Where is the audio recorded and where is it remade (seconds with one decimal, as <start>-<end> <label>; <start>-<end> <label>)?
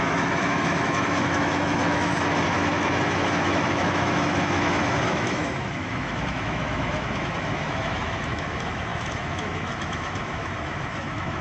0.0-11.4 remade